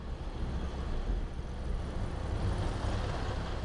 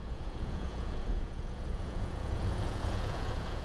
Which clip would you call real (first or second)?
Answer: first